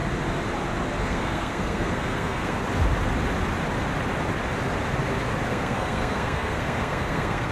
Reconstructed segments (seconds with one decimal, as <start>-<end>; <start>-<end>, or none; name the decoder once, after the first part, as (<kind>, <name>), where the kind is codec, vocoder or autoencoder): 1.0-2.6 (codec, SNAC); 5.5-7.5